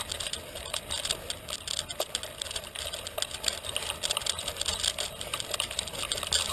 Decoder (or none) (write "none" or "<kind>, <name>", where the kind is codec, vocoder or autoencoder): none